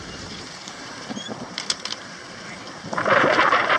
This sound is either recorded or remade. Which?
remade